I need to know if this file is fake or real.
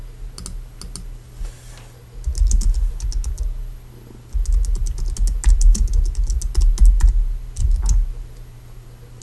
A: real